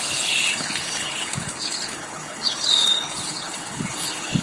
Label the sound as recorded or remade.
remade